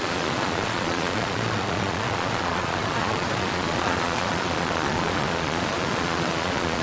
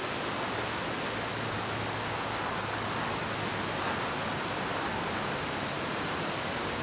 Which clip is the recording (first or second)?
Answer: second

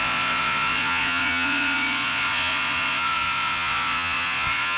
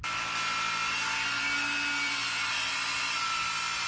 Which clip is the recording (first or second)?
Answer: second